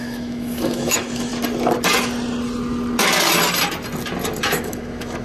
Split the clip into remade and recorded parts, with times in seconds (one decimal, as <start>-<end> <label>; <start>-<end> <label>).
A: 0.0-1.3 remade; 1.3-4.4 recorded; 4.4-5.2 remade

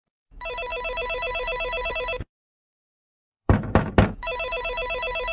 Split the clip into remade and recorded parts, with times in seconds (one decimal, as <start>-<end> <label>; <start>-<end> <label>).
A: 0.0-5.3 remade

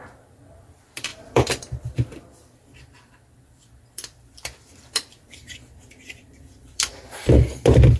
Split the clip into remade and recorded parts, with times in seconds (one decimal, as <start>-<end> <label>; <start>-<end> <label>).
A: 0.0-6.9 remade; 6.9-8.0 recorded

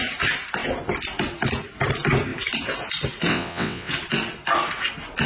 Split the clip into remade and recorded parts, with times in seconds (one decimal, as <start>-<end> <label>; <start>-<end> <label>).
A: 0.0-3.3 recorded; 3.3-3.9 remade; 3.9-5.3 recorded

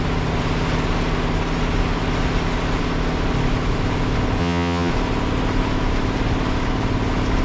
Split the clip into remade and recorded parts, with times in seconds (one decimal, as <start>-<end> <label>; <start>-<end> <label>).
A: 0.0-4.4 recorded; 4.4-4.9 remade; 4.9-7.4 recorded